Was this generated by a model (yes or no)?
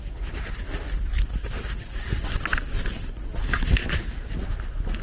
no